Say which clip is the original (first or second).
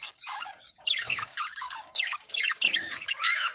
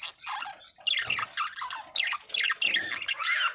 second